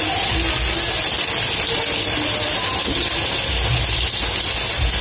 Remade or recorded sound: recorded